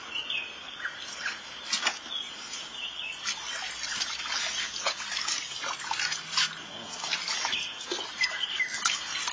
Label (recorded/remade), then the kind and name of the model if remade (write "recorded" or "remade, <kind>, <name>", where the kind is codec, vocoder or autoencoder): recorded